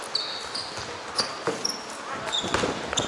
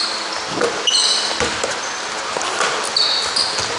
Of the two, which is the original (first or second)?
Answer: first